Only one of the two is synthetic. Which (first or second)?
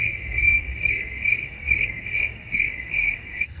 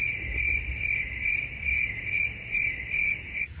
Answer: first